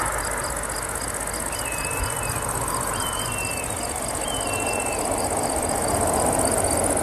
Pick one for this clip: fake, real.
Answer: real